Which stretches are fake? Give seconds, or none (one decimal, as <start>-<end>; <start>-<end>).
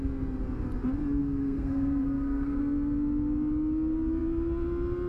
1.2-2.6